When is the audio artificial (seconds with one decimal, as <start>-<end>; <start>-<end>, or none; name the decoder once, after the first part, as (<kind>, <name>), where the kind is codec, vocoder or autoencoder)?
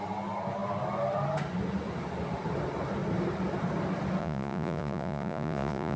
4.2-6.0 (vocoder, Vocos)